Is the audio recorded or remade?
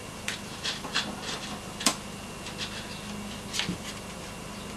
recorded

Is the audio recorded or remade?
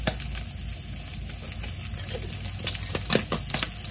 recorded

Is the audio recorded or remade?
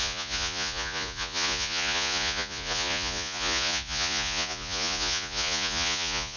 remade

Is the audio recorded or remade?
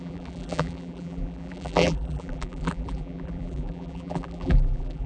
remade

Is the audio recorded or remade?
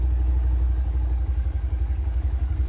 remade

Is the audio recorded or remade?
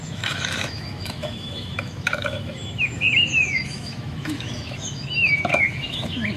remade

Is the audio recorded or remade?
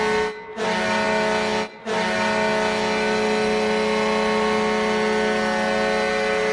recorded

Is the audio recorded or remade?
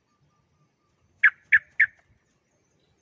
recorded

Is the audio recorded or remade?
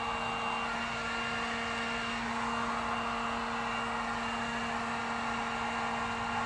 recorded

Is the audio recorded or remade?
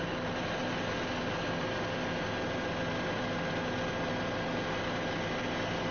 recorded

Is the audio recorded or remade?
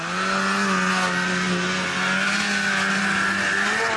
recorded